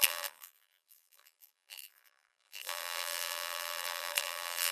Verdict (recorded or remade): remade